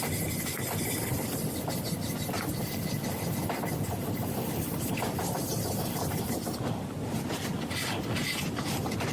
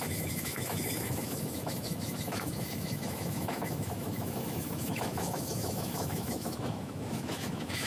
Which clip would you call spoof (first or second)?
second